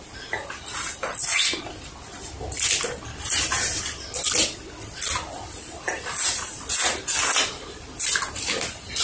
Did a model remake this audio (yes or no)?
no